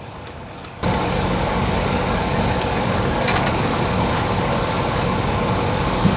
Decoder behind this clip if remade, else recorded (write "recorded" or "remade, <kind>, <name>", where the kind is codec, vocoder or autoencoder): remade, codec, DAC